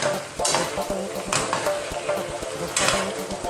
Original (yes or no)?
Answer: yes